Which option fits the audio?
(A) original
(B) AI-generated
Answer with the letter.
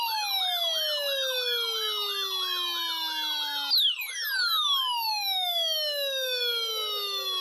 A